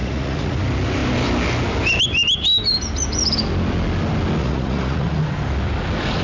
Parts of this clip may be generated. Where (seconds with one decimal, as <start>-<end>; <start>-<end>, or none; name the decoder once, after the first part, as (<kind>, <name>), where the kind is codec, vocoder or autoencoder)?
0.0-0.6 (vocoder, Vocos); 4.4-5.2